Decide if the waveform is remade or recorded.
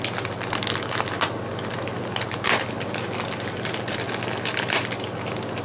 recorded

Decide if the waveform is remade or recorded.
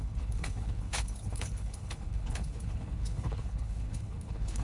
remade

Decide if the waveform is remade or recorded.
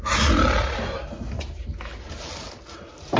recorded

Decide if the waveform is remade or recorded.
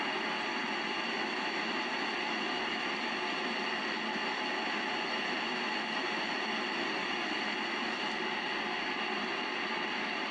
recorded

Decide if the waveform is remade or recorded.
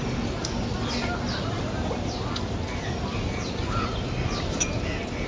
recorded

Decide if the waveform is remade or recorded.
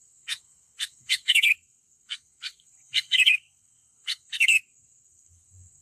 remade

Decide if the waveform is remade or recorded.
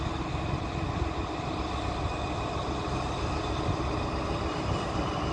recorded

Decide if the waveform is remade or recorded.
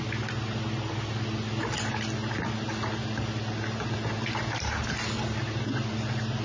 recorded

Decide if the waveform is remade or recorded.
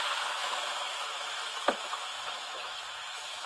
remade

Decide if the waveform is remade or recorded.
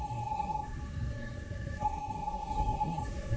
remade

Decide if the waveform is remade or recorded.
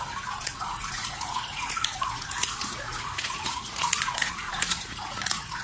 remade